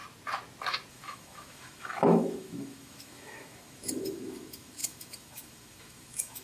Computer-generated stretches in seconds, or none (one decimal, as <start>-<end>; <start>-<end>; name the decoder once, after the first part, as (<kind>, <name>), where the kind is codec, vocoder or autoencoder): 0.9-6.4 (autoencoder, DAC-VAE)